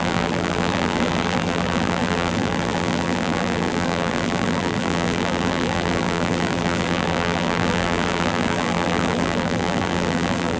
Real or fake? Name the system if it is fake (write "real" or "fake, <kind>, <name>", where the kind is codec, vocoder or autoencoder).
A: fake, vocoder, BigVGAN v2